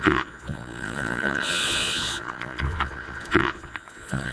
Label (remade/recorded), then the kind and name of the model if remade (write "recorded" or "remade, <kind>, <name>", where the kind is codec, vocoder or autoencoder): remade, vocoder, Vocos